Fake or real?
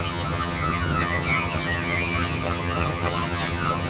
fake